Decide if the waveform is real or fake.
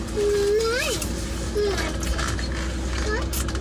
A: real